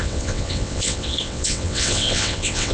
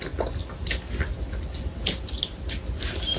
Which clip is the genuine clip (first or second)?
second